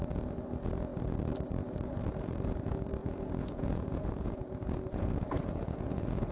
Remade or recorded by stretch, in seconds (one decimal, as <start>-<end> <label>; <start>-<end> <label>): 0.0-3.0 recorded; 3.0-6.3 remade